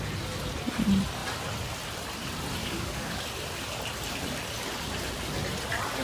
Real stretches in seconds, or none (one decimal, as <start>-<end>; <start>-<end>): 0.0-2.6; 3.2-6.0